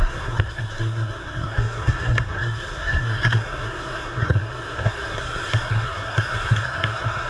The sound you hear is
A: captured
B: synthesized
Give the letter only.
B